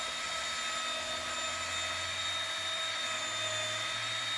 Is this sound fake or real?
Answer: real